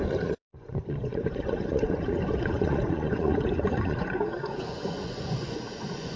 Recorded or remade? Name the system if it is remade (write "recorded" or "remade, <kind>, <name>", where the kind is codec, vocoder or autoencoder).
remade, vocoder, Vocos